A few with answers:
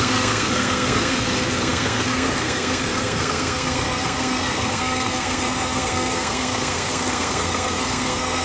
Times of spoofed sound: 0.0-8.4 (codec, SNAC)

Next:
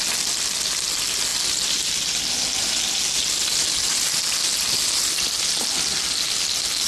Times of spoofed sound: none

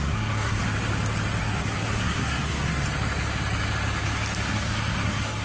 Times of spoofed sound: 0.0-0.6 (codec, SNAC); 1.4-2.8; 4.5-5.4

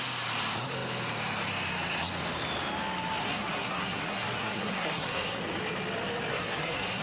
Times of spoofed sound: 3.2-5.4 (codec, SNAC); 6.3-7.0

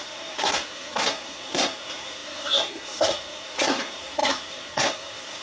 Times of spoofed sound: 0.0-5.4 (codec, SNAC)

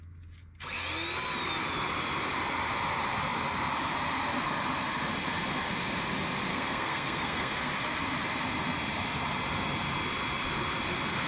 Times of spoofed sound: 6.5-7.7 (codec, SNAC)

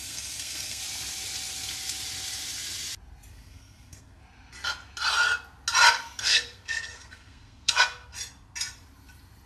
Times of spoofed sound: 0.0-0.8 (codec, SNAC); 3.3-4.2; 6.2-8.1

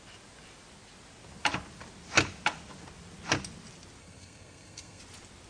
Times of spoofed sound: 4.0-5.0 (codec, SNAC)